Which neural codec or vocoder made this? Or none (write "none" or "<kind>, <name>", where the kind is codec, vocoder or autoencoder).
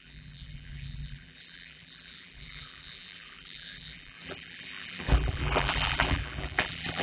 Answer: vocoder, BigVGAN v2